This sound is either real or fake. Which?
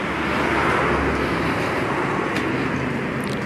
real